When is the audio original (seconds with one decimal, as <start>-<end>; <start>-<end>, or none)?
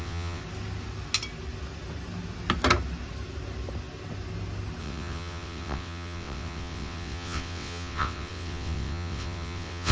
0.4-4.8